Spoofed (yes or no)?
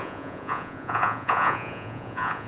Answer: yes